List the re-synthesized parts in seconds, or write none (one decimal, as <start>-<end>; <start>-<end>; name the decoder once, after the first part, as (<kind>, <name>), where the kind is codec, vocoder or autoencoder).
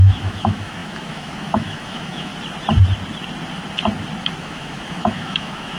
0.0-2.3 (autoencoder, DAC-VAE); 4.4-5.8